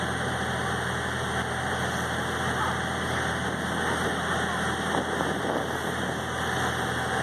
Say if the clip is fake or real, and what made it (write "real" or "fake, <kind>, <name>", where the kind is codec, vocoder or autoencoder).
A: real